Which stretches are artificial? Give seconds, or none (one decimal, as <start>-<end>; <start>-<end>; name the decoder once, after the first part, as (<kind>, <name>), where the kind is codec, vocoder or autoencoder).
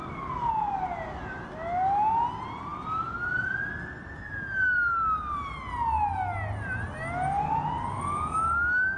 none